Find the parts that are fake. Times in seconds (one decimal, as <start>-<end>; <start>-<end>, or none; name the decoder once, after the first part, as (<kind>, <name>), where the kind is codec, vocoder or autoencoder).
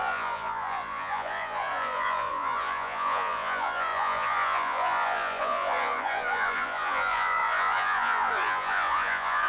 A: 0.0-9.5 (vocoder, Vocos)